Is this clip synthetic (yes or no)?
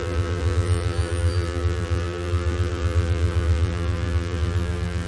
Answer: yes